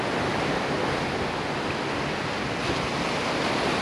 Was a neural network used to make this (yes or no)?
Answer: no